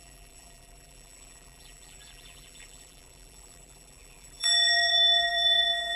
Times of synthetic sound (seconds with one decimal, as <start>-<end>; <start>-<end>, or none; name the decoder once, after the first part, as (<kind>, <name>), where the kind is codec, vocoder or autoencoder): 0.0-6.0 (vocoder, BigVGAN v2)